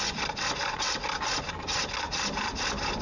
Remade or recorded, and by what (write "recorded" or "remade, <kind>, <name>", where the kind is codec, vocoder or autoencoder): recorded